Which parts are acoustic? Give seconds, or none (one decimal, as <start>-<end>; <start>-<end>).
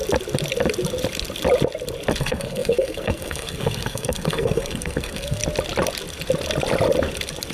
0.0-2.2; 5.4-7.5